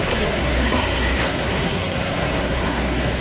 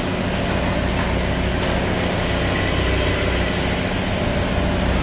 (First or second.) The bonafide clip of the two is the second